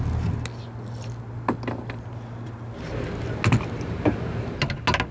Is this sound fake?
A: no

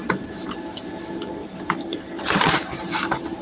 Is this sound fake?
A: yes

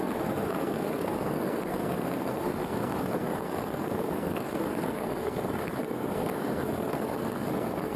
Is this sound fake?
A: yes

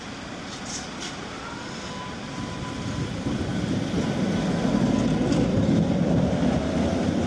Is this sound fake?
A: no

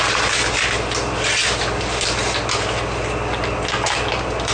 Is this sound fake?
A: no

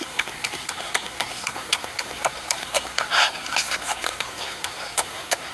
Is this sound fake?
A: yes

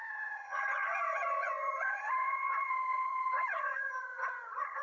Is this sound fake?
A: yes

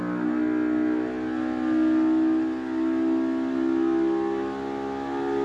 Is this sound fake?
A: no